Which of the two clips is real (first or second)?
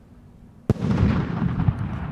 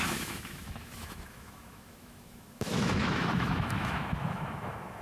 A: first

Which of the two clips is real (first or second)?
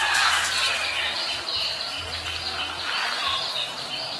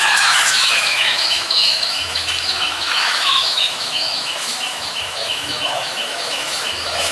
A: first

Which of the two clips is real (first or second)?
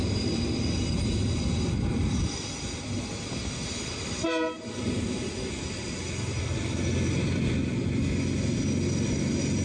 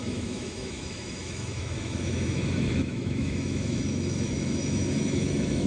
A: first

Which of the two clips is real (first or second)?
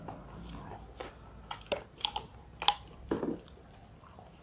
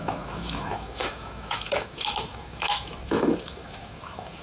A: first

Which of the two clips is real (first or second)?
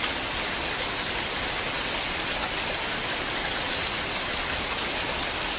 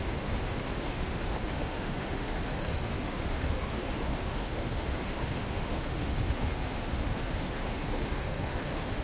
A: first